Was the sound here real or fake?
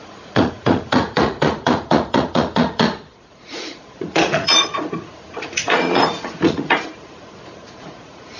fake